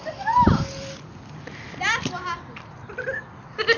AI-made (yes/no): no